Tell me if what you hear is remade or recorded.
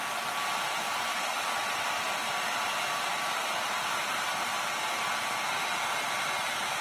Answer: recorded